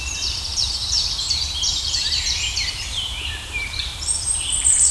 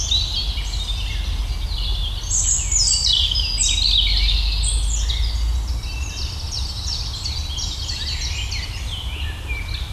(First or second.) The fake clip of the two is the first